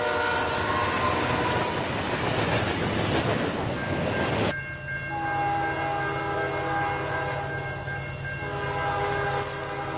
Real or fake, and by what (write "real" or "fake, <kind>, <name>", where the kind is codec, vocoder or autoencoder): real